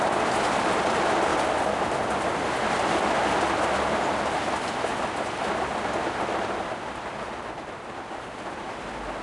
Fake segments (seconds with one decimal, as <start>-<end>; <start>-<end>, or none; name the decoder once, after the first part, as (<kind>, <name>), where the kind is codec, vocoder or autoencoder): none